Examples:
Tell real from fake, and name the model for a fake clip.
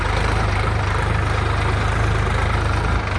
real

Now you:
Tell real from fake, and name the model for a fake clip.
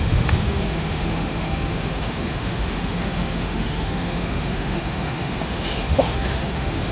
fake, autoencoder, DAC-VAE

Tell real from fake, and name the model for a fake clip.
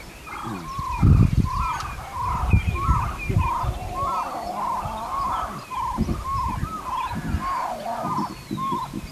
real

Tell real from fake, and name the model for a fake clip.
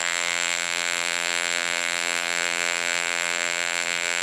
fake, vocoder, BigVGAN v2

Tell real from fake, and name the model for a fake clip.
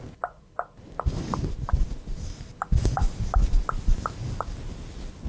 real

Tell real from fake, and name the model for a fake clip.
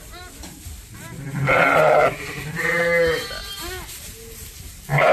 real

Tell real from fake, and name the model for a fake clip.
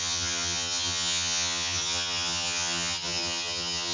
fake, vocoder, HiFi-GAN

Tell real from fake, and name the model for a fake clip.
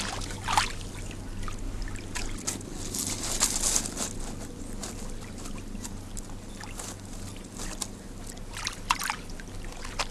real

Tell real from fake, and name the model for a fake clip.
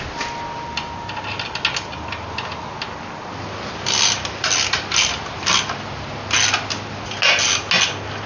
real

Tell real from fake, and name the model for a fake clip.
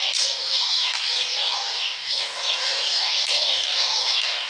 fake, codec, DAC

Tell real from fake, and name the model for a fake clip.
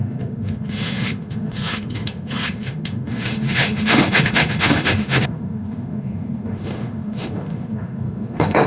fake, autoencoder, DAC-VAE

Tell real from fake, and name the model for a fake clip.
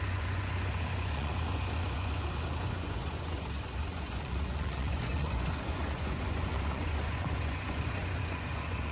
fake, vocoder, Vocos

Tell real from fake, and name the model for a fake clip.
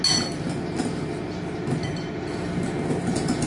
real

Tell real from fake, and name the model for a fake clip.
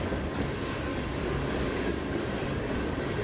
fake, codec, DAC